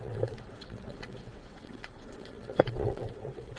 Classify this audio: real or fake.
fake